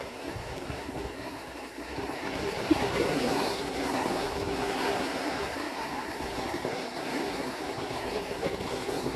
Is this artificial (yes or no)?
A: yes